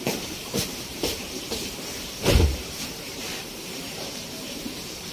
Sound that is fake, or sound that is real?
fake